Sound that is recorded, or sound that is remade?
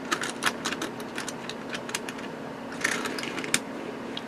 recorded